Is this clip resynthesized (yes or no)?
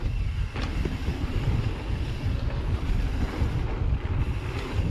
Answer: no